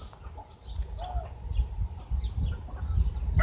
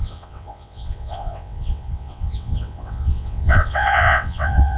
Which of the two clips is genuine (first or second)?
first